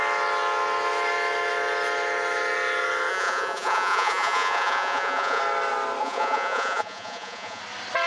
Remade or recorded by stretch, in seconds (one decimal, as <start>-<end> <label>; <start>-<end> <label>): 0.0-3.1 recorded; 3.1-5.4 remade; 5.4-6.0 recorded; 6.0-7.6 remade; 7.6-8.1 recorded